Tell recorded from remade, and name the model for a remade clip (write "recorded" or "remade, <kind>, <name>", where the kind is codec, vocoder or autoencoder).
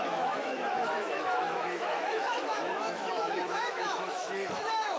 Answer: remade, autoencoder, DAC-VAE